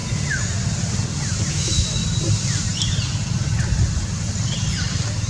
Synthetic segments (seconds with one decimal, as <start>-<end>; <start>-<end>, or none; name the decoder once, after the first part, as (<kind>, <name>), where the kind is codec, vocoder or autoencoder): 1.5-2.0 (autoencoder, DAC-VAE)